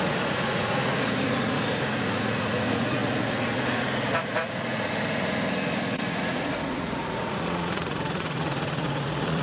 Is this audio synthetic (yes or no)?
yes